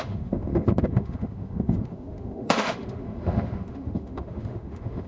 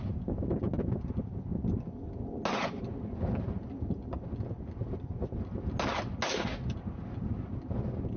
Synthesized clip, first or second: first